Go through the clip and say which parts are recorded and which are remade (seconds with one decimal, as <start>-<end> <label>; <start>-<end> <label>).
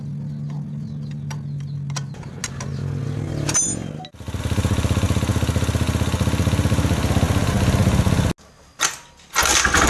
0.0-9.9 recorded